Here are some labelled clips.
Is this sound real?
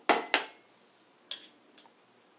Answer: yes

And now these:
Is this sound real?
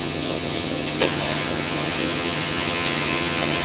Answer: no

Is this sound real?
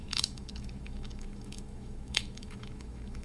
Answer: no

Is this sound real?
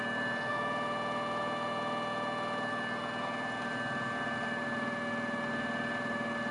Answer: yes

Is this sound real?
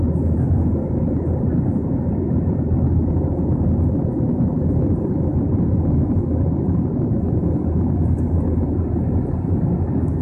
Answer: yes